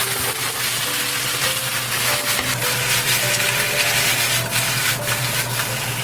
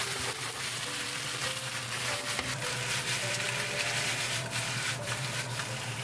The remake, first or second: second